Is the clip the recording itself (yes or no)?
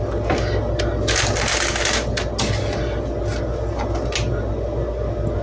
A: yes